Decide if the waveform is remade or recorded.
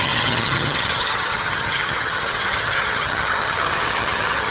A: remade